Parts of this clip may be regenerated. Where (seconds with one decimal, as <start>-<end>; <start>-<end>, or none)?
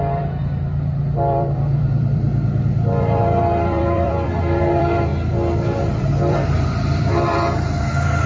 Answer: 0.0-5.1; 5.8-8.3